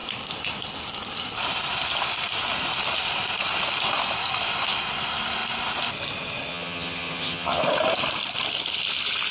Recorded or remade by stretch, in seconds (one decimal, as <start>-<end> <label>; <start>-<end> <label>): 0.0-6.5 recorded; 6.5-7.6 remade; 7.6-9.3 recorded